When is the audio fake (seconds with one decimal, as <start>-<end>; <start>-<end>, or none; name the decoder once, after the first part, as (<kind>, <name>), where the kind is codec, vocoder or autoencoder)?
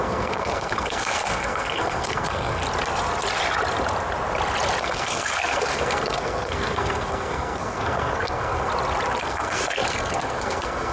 0.0-2.6 (codec, SNAC); 4.8-8.7; 9.2-10.9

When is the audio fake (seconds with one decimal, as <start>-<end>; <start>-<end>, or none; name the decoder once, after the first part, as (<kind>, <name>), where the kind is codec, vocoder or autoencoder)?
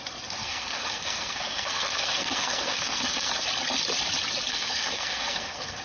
0.4-3.3 (codec, SNAC); 4.5-5.8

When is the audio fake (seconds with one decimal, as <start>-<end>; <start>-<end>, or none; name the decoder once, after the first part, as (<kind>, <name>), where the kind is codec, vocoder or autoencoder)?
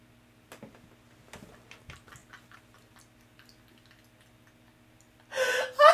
none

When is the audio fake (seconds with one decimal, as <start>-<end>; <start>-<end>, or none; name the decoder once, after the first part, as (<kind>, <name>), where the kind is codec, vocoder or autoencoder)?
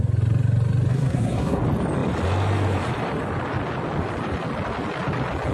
0.9-1.6 (codec, SNAC)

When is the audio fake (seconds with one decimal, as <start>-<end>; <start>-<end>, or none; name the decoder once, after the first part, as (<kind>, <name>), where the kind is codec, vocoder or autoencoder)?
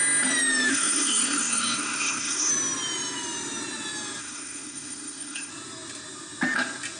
0.7-2.5 (codec, SNAC); 4.2-5.5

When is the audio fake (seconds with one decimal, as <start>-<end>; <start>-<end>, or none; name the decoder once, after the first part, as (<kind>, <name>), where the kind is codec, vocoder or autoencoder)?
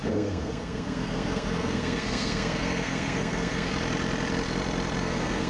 0.0-3.7 (codec, SNAC); 5.0-5.5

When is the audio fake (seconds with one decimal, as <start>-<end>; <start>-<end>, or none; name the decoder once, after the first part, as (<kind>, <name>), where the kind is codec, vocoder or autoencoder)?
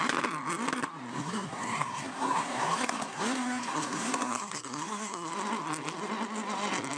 1.1-5.3 (codec, SNAC)